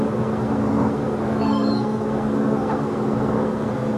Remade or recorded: remade